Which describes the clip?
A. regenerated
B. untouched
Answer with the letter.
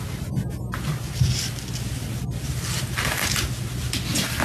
B